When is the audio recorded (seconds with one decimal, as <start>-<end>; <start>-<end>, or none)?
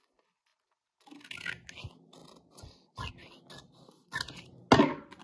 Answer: 0.0-5.2